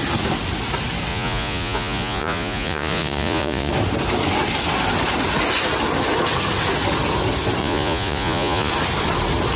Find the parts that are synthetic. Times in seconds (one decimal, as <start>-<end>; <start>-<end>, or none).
1.1-3.7; 7.6-8.7

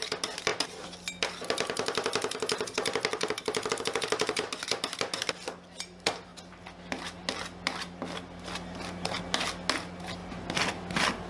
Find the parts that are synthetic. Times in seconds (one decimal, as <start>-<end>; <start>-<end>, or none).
none